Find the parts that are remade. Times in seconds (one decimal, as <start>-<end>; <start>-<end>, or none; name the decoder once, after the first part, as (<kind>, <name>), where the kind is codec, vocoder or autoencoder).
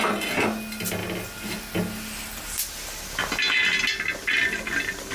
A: none